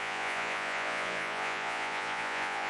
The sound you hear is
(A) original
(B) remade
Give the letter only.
B